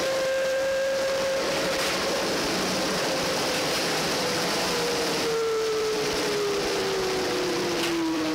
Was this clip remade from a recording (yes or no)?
yes